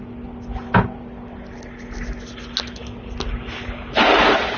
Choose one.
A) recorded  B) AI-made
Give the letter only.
A